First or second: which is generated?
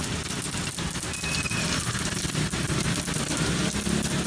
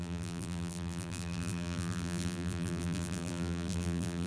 second